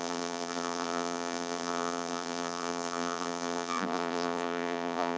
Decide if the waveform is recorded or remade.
remade